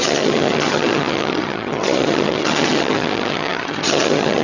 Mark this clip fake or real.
fake